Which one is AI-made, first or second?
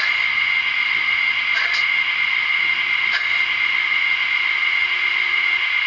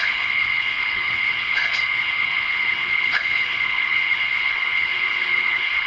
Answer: second